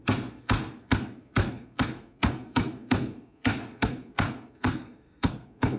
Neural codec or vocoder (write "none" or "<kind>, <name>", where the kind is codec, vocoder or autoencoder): codec, SNAC